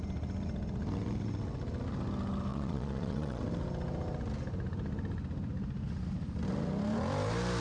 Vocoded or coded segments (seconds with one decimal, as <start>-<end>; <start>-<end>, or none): 2.5-3.4